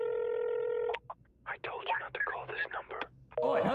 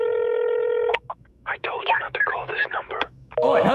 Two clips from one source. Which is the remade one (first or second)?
second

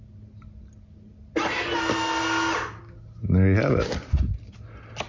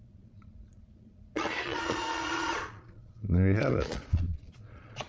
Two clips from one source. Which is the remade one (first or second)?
second